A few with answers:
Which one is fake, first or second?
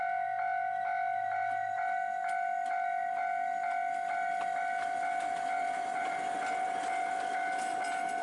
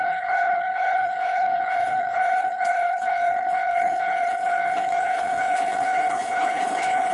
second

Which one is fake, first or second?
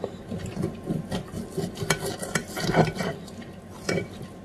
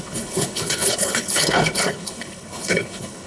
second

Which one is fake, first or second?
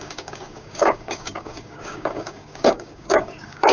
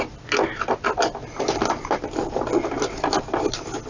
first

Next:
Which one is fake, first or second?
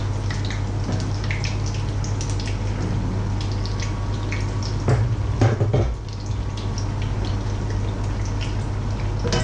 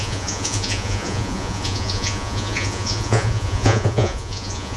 second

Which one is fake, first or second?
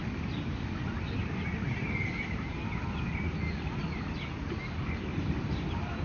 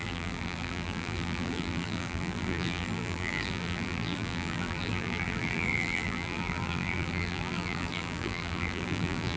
second